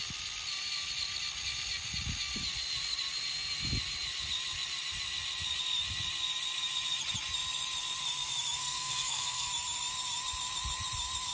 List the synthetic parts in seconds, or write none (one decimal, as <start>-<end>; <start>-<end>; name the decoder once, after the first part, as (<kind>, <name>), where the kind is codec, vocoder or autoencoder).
8.6-9.5 (codec, SNAC)